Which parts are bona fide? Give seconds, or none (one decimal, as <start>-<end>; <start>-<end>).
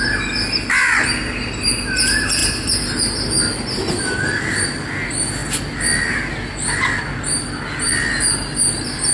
0.0-9.1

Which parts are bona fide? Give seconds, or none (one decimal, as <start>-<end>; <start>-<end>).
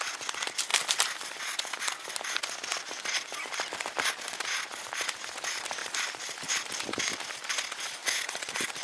0.0-0.7; 4.1-5.8; 7.2-8.0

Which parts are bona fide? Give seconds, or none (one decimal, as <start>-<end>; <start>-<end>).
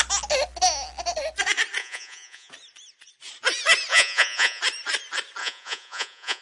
0.0-1.8; 2.5-3.9; 4.6-5.4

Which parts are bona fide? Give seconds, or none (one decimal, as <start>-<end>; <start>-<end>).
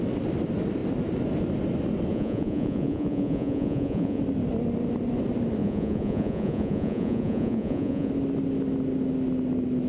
0.0-2.1; 4.2-5.6; 8.1-9.9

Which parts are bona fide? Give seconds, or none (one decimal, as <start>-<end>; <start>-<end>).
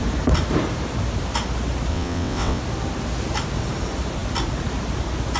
0.0-1.9; 2.6-5.4